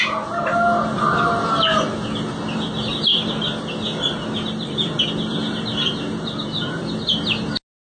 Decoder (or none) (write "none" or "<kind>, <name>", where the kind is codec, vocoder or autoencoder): none